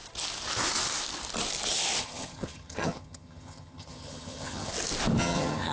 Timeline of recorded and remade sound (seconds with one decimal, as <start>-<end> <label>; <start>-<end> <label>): 0.0-2.0 recorded; 2.0-4.7 remade; 4.7-5.2 recorded; 5.2-5.7 remade